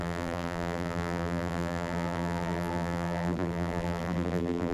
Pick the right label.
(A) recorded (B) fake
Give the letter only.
B